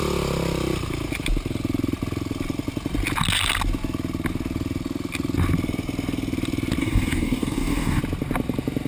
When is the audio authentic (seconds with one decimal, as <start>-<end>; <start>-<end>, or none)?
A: 0.0-6.8; 8.0-8.9